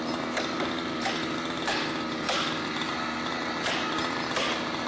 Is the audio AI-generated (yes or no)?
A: no